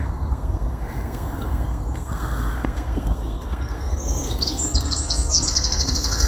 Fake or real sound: fake